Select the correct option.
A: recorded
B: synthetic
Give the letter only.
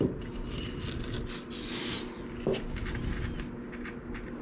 A